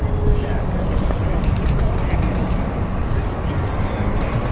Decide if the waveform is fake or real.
real